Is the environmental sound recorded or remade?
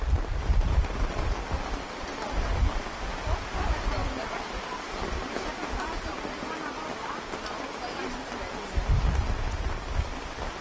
recorded